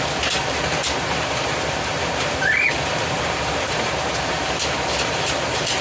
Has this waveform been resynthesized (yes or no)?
yes